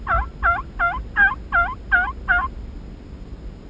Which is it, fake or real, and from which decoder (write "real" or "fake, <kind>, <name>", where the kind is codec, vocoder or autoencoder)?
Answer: real